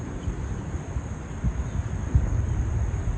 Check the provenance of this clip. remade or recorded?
recorded